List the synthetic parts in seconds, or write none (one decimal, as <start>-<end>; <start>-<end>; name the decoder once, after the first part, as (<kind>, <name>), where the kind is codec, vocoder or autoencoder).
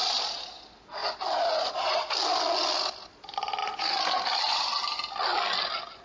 none